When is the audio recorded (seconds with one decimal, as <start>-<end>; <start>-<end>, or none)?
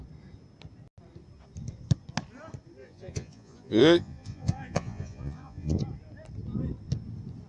0.0-2.8; 5.8-7.5